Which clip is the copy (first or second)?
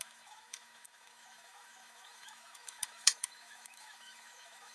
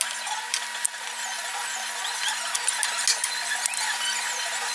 first